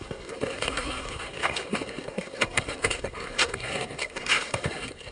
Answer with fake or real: fake